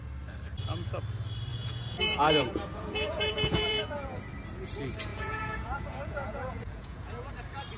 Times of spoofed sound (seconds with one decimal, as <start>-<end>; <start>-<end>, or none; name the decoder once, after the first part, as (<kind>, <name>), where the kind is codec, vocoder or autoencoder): 1.5-4.2 (vocoder, Vocos); 5.1-7.3